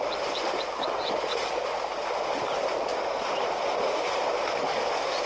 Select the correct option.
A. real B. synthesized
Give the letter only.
A